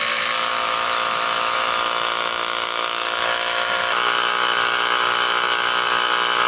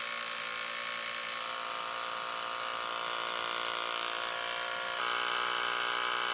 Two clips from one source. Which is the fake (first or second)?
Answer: first